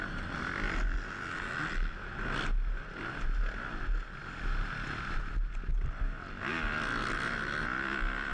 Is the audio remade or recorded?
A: recorded